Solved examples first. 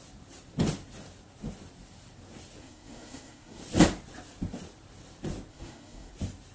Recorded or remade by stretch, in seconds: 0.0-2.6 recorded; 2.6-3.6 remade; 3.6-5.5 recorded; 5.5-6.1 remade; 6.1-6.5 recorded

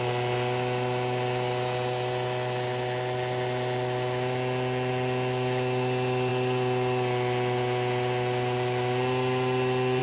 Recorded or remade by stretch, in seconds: 0.0-10.0 recorded